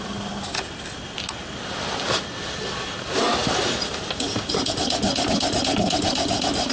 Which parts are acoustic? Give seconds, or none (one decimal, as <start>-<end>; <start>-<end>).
0.0-6.7